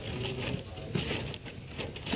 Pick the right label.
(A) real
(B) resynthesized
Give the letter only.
A